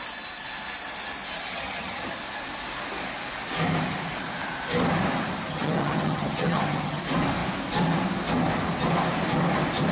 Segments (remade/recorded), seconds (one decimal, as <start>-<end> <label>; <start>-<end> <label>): 0.0-1.5 recorded; 1.5-2.1 remade; 2.1-5.5 recorded; 5.5-7.0 remade; 7.0-9.9 recorded